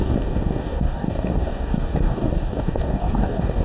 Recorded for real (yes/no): no